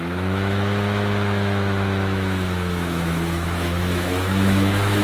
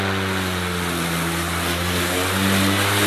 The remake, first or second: first